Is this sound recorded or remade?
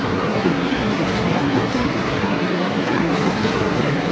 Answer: remade